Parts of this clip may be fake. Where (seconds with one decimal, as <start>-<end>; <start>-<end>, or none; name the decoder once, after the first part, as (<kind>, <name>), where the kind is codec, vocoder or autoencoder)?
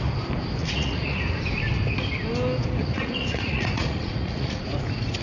0.6-1.2 (vocoder, Vocos); 2.8-4.6